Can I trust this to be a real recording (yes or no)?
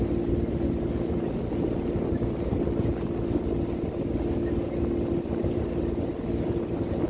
yes